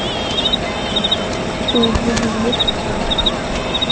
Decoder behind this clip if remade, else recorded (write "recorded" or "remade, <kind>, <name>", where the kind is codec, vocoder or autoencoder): recorded